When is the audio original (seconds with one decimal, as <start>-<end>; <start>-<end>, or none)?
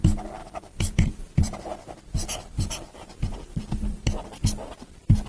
0.0-0.4; 3.6-5.3